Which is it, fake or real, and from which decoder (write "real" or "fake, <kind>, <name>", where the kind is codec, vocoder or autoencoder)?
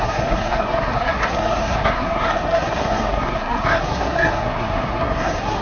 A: fake, codec, SNAC